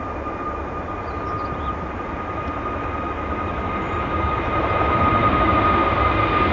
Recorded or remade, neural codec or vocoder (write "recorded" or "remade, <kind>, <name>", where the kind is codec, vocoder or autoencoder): recorded